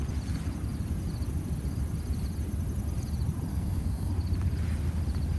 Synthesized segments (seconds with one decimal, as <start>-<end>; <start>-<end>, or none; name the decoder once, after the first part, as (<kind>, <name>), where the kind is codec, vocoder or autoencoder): 3.5-4.1 (codec, SNAC)